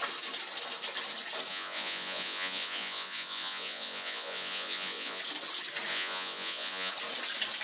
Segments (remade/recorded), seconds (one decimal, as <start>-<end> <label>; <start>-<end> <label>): 0.0-1.5 recorded; 1.5-5.2 remade; 5.2-5.9 recorded; 5.9-6.9 remade; 6.9-7.6 recorded